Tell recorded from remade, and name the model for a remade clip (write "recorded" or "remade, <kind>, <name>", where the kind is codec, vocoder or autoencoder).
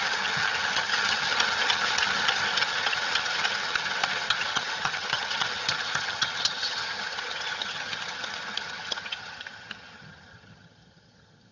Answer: remade, vocoder, HiFi-GAN